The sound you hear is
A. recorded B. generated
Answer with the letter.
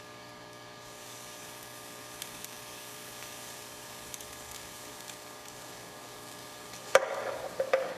B